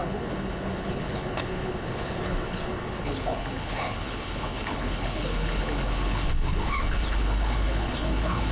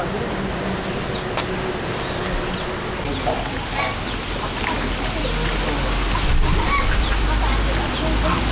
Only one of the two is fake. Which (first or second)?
first